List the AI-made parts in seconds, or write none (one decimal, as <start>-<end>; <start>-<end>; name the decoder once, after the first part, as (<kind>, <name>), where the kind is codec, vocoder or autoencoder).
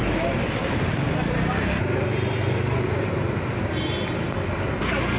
0.6-3.7 (vocoder, BigVGAN v2)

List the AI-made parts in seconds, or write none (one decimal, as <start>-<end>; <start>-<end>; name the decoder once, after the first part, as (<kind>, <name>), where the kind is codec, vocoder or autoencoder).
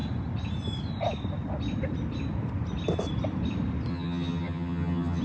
3.9-5.2 (vocoder, HiFi-GAN)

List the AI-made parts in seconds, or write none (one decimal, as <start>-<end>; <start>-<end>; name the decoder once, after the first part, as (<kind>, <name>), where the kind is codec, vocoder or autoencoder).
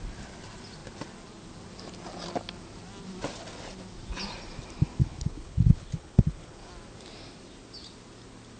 5.0-6.7 (codec, HILCodec)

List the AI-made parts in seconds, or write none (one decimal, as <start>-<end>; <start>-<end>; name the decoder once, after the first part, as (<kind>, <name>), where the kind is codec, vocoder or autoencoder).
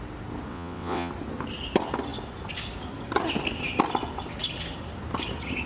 0.5-1.1 (vocoder, WaveNeXt)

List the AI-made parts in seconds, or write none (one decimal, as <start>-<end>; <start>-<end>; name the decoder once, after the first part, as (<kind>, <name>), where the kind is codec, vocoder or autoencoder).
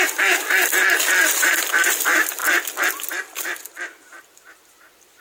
none